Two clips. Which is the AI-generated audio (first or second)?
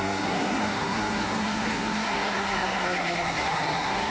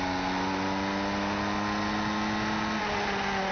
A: first